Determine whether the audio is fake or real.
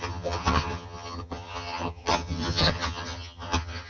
fake